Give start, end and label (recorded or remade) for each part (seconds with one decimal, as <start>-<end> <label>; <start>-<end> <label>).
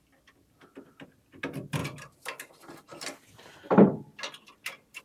0.0-5.0 recorded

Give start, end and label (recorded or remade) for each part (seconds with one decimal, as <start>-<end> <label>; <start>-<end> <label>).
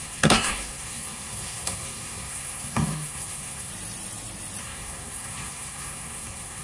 0.0-3.7 remade; 3.7-4.6 recorded; 4.6-6.6 remade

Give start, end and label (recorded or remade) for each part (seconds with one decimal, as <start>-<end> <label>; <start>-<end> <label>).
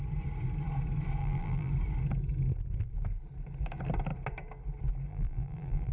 0.0-1.2 recorded; 1.2-1.7 remade; 1.7-5.1 recorded; 5.1-5.9 remade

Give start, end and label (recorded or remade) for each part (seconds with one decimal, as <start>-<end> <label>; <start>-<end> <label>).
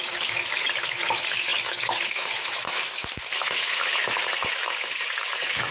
0.0-5.7 remade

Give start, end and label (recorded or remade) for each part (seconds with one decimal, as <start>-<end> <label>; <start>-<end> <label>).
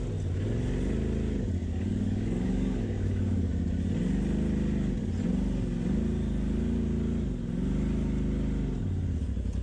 0.0-1.6 recorded; 1.6-3.5 remade; 3.5-9.6 recorded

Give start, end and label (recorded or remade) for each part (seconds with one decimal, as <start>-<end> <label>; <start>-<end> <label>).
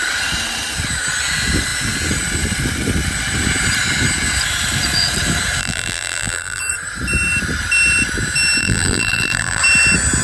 0.0-5.6 recorded; 5.6-6.6 remade; 6.6-8.6 recorded; 8.6-9.6 remade; 9.6-10.2 recorded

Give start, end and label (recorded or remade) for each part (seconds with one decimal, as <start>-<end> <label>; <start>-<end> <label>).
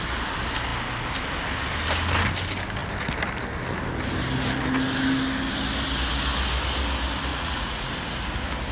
0.0-7.3 recorded; 7.3-7.9 remade; 7.9-8.7 recorded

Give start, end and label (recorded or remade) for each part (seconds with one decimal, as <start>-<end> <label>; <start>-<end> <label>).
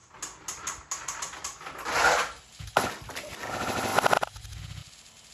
0.0-5.3 recorded